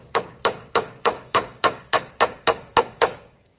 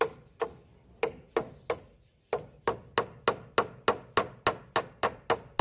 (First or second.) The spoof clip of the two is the first